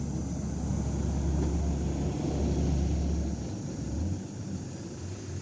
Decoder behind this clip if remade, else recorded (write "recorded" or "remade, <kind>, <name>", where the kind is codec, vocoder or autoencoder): recorded